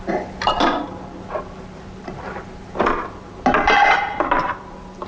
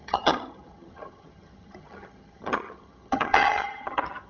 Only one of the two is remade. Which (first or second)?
second